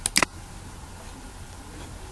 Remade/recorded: recorded